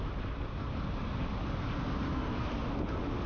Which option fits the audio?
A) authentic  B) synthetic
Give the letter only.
A